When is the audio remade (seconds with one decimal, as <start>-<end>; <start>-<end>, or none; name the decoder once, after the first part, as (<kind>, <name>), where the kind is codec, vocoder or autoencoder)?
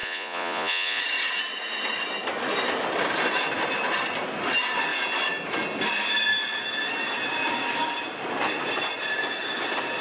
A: 0.0-1.0 (vocoder, Vocos)